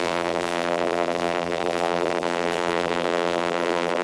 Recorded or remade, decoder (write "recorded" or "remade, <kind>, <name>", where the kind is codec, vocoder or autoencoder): remade, vocoder, BigVGAN v2